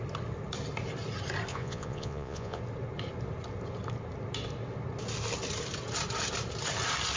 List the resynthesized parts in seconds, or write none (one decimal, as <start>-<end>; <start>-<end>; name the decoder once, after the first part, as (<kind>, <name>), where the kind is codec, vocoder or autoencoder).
1.5-2.6 (vocoder, Vocos)